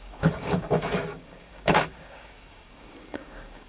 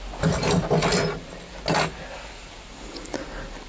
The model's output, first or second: first